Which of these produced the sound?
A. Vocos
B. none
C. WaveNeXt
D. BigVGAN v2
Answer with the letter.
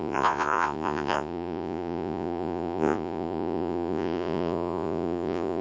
A